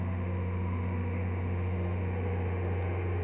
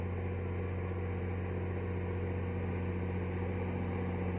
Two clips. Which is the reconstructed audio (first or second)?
first